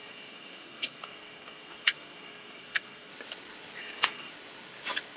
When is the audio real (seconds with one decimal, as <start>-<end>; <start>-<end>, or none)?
3.1-3.8; 4.3-5.2